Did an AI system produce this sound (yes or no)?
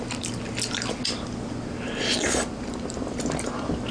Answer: no